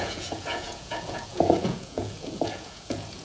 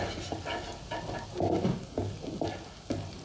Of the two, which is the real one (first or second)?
second